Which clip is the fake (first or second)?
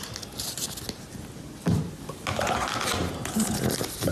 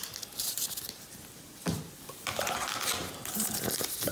second